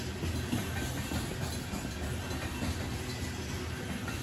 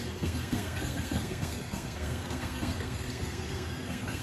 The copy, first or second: second